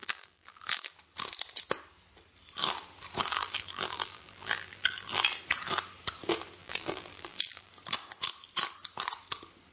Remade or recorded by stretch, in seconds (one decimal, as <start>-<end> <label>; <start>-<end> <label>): 0.0-0.9 remade; 0.9-3.3 recorded; 3.3-5.3 remade; 5.3-6.6 recorded; 6.6-7.7 remade; 7.7-9.7 recorded